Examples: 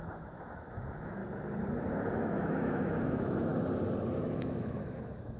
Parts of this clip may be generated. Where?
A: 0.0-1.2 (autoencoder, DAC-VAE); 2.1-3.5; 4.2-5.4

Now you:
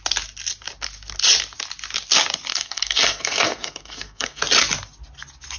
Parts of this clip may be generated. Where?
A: 2.5-4.4 (codec, SNAC)

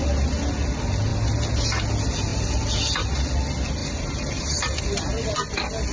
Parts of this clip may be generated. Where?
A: 3.8-4.8 (vocoder, BigVGAN v2)

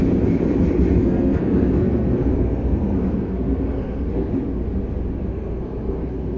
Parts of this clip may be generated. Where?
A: 1.0-4.3 (codec, SNAC); 5.3-6.4

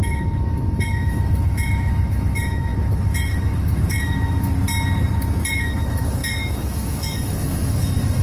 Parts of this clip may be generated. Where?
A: 0.0-4.5 (autoencoder, DAC-VAE); 5.5-8.2